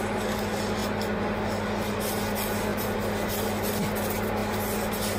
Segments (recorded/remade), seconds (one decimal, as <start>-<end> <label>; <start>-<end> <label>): 0.0-5.2 recorded